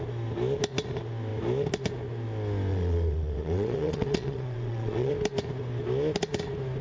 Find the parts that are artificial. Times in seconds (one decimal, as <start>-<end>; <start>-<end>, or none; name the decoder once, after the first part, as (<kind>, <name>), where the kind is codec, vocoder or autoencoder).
2.7-5.1 (vocoder, WaveNeXt)